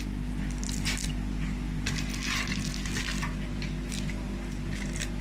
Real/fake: real